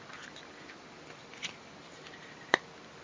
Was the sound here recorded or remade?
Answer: recorded